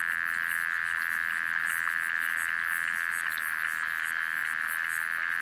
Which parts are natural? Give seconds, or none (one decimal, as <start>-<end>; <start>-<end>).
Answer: 0.0-5.4